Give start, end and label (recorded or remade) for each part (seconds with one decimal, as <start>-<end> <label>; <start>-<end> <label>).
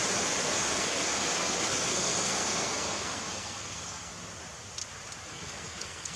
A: 0.0-0.4 recorded; 0.4-4.1 remade; 4.1-5.3 recorded; 5.3-6.2 remade